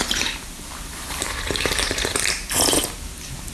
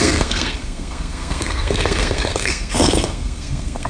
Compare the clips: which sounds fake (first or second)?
second